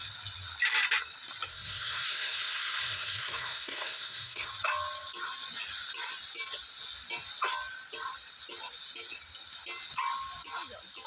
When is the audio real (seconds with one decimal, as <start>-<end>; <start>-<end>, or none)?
0.0-1.5; 4.5-11.1